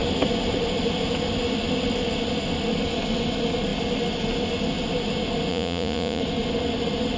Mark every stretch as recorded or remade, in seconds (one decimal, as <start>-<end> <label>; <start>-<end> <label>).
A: 0.0-5.5 recorded; 5.5-6.2 remade; 6.2-7.2 recorded